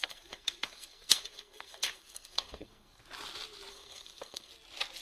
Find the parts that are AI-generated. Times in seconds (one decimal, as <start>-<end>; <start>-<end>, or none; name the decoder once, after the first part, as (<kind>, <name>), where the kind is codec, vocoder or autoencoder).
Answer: 0.0-3.0 (codec, SNAC); 3.7-4.5